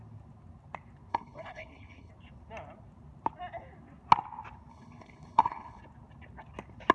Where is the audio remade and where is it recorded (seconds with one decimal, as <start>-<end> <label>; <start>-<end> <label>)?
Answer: 0.0-1.1 recorded; 1.1-2.1 remade; 2.1-4.7 recorded; 4.7-5.8 remade; 5.8-6.9 recorded